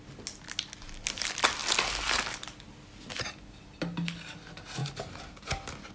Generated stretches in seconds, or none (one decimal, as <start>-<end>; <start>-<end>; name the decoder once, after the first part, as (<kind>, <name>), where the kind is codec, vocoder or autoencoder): none